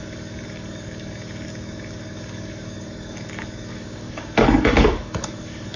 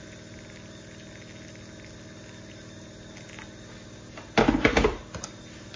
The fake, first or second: first